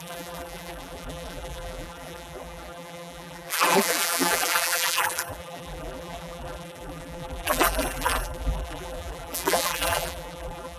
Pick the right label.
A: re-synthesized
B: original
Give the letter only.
A